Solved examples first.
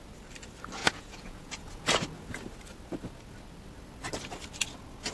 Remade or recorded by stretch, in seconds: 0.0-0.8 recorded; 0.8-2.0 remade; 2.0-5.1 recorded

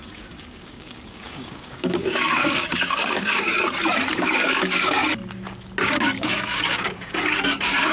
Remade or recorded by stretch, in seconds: 0.0-3.5 remade; 3.5-4.2 recorded; 4.2-5.0 remade; 5.0-5.8 recorded; 5.8-7.9 remade